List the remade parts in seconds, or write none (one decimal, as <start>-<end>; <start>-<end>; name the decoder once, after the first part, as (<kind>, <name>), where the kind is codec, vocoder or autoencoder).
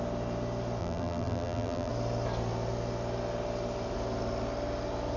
0.8-1.9 (vocoder, BigVGAN v2)